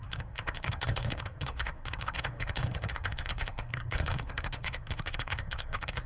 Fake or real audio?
fake